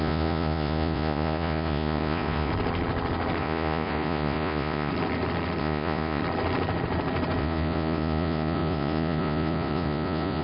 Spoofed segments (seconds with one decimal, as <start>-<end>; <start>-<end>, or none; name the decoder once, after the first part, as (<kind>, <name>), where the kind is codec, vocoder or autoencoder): 0.0-2.5 (vocoder, Vocos); 3.4-4.9; 5.6-6.2; 7.4-10.4